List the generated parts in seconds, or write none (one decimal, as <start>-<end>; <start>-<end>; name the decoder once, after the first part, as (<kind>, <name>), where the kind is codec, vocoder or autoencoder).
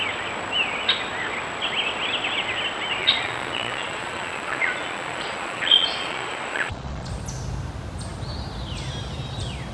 3.0-7.1 (vocoder, Vocos)